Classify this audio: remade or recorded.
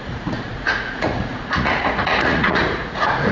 remade